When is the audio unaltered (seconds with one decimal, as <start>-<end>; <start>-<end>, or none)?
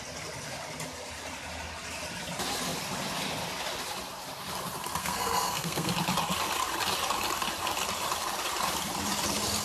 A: 0.0-5.0; 5.9-9.6